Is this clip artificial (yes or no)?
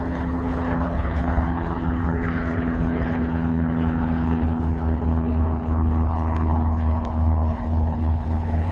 yes